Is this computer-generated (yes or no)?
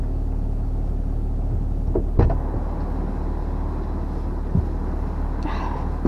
no